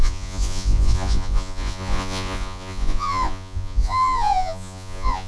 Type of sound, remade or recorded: remade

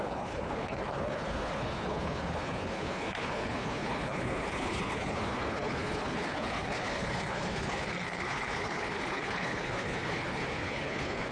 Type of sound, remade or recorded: remade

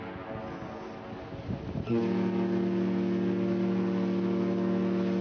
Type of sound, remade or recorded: recorded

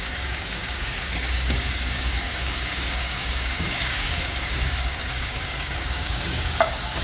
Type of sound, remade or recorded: remade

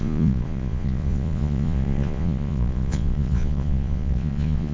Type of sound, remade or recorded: remade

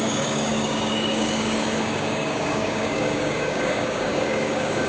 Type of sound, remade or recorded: remade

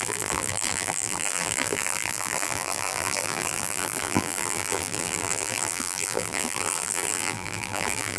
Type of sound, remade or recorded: remade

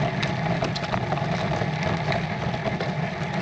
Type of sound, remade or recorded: recorded